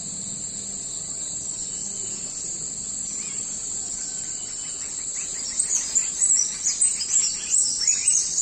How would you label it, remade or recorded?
recorded